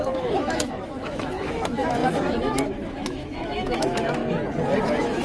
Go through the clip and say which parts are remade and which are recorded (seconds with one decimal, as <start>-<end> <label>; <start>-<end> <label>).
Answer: 0.0-4.2 remade; 4.2-4.8 recorded; 4.8-5.2 remade